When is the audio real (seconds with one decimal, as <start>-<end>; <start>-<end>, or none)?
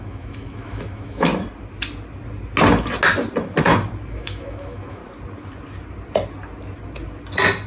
1.3-4.1; 5.0-7.7